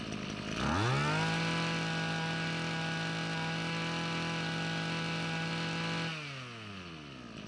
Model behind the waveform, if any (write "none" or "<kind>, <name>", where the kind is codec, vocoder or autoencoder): none